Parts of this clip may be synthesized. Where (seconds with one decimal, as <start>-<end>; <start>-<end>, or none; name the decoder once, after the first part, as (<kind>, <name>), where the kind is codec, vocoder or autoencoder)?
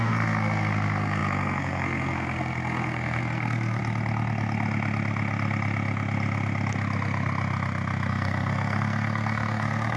0.0-3.8 (codec, SNAC); 8.1-10.0